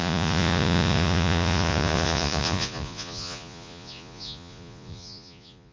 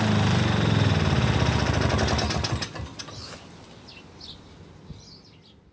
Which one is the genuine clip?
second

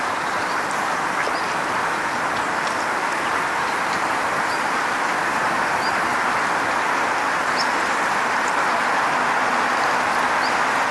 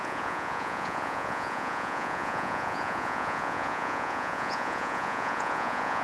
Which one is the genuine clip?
first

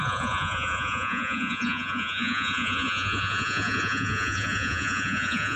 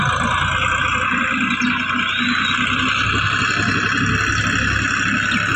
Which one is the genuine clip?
second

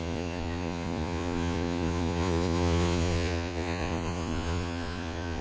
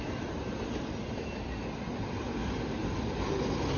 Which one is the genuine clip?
second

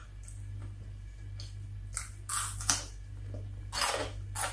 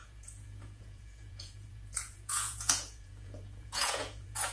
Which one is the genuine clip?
first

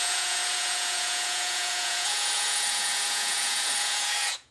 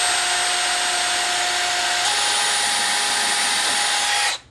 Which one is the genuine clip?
second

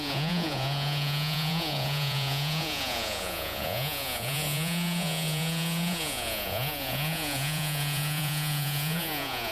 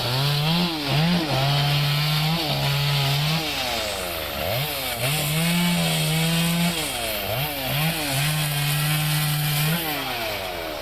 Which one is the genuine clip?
second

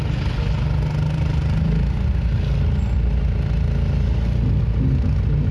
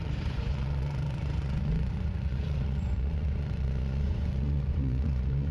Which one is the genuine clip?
first